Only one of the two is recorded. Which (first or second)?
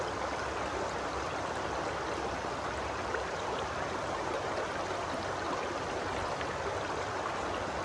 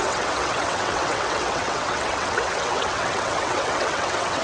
first